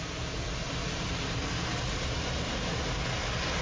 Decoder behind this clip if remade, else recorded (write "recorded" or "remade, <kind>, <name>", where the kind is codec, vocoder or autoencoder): recorded